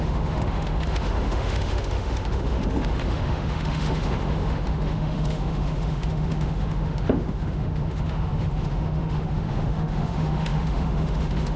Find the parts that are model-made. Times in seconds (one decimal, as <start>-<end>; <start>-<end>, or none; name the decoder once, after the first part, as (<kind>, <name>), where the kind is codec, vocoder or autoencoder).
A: 0.0-11.6 (autoencoder, DAC-VAE)